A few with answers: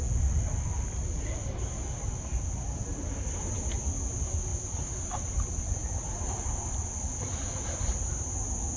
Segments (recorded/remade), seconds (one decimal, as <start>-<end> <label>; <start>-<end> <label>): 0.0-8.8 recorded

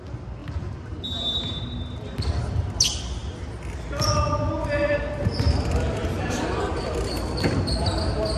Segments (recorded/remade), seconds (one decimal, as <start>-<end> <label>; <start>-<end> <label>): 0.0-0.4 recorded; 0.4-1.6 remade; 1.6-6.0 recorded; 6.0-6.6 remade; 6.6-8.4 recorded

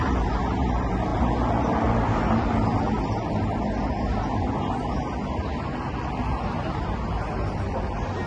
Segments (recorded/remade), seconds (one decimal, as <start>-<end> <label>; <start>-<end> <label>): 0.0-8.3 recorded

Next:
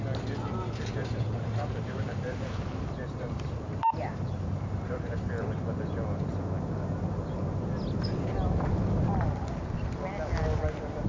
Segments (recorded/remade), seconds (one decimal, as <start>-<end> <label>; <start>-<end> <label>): 0.0-1.0 recorded; 1.0-5.3 remade; 5.3-11.1 recorded

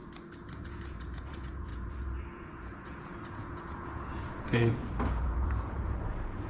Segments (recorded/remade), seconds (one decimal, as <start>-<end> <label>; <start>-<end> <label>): 0.0-0.6 recorded; 0.6-6.5 remade